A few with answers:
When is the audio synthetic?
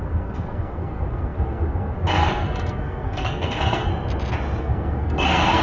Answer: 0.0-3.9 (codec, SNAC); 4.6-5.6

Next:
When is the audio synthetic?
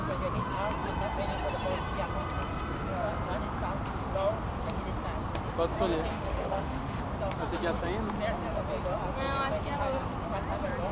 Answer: 6.1-7.0 (autoencoder, DAC-VAE)